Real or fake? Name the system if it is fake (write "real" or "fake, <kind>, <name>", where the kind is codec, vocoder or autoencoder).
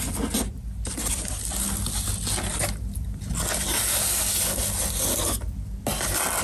real